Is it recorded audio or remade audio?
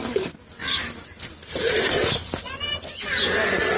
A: recorded